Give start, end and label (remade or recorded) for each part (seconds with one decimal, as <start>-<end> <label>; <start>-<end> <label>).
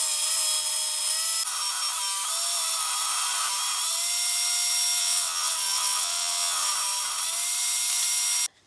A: 0.0-5.0 recorded; 5.0-6.7 remade; 6.7-8.7 recorded